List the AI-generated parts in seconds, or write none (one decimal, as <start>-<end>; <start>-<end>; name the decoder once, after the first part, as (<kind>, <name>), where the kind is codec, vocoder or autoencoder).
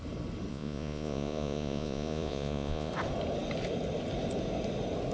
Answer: 0.5-2.9 (vocoder, Vocos)